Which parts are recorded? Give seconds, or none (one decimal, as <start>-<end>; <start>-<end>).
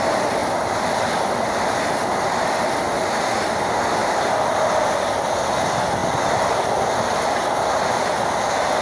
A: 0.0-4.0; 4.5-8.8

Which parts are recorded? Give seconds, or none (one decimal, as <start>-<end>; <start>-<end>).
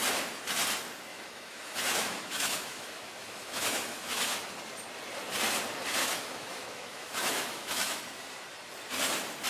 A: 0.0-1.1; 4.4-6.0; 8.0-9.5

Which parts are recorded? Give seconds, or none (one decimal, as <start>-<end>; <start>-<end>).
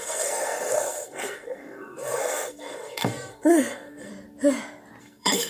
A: 4.1-5.0